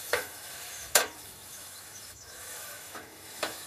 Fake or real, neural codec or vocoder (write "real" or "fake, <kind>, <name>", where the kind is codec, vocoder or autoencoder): fake, autoencoder, DAC-VAE